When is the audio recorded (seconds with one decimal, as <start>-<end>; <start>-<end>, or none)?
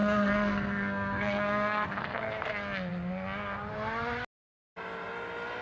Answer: 2.5-5.6